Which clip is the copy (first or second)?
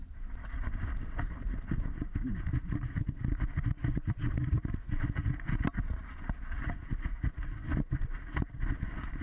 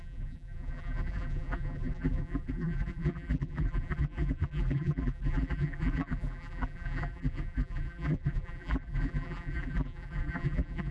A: second